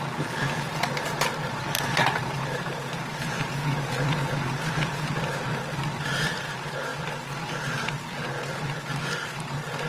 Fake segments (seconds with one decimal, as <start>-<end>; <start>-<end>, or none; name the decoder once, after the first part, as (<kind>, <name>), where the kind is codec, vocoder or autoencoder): 0.7-1.6 (vocoder, BigVGAN v2); 2.0-3.9